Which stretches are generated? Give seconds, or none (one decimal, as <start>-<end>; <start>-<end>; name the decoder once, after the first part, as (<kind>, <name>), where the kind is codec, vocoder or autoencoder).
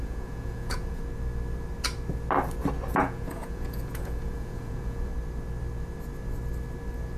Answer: 0.0-1.0 (vocoder, Vocos); 3.0-5.1